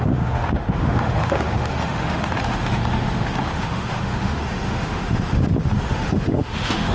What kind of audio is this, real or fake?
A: fake